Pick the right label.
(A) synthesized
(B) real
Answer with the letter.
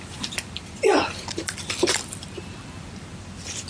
A